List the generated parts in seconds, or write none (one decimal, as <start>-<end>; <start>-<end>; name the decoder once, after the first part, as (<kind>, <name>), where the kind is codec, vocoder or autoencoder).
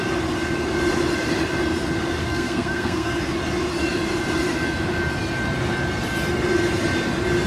2.2-3.1 (codec, SNAC)